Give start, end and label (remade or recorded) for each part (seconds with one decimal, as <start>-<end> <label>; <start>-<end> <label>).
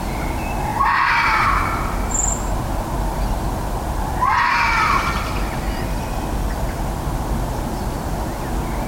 0.0-8.9 recorded